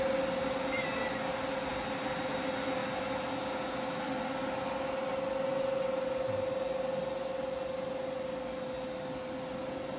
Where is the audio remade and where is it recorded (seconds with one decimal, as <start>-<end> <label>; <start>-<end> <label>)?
0.0-10.0 recorded